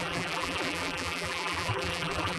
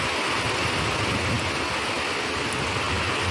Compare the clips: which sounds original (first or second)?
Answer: second